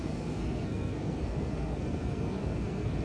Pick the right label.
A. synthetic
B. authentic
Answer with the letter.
A